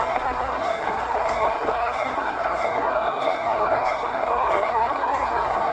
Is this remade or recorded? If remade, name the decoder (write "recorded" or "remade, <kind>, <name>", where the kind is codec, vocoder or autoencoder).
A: remade, codec, SNAC